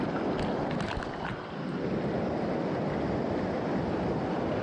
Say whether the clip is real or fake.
real